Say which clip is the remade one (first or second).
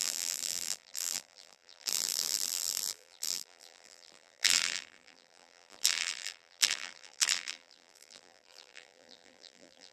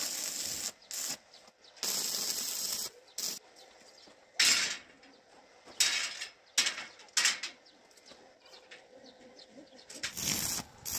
first